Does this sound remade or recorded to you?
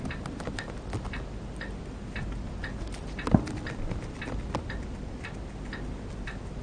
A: recorded